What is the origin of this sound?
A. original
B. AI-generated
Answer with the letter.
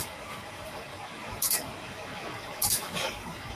B